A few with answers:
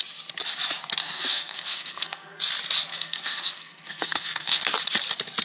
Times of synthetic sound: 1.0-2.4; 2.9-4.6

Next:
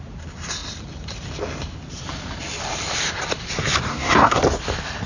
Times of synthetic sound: 3.9-4.4

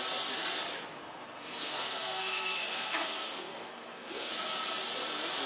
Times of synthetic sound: 1.0-4.3

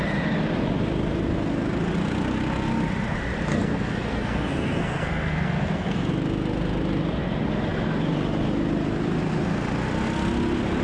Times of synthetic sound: 3.5-6.1

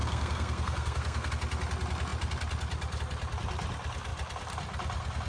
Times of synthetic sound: 0.0-1.3